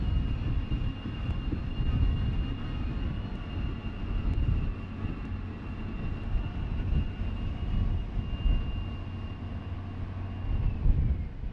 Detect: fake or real real